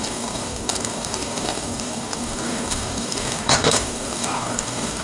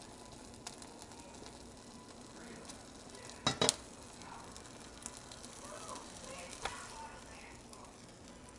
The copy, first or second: first